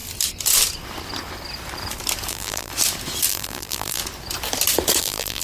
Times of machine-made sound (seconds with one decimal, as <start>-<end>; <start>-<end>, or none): 2.3-2.7; 3.3-4.0; 5.0-5.4